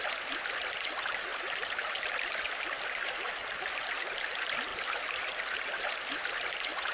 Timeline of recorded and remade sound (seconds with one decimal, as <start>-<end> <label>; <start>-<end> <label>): 0.0-1.3 remade; 1.3-1.9 recorded; 1.9-3.4 remade; 3.4-4.0 recorded; 4.0-4.7 remade; 4.7-5.6 recorded; 5.6-6.9 remade